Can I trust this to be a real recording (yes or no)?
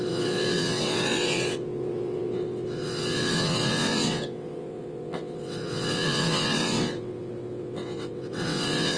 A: no